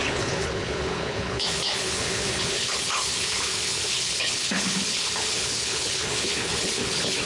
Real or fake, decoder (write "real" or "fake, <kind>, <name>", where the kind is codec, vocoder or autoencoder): fake, codec, HILCodec